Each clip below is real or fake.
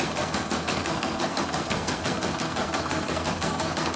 fake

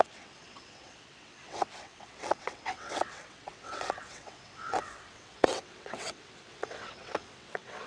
fake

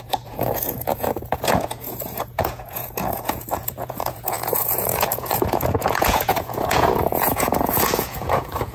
fake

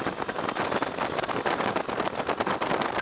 real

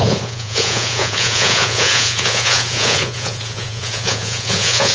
fake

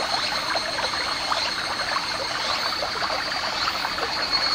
real